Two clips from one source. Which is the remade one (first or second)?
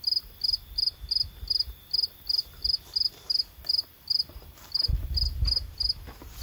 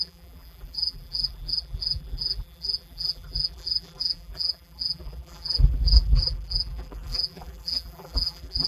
second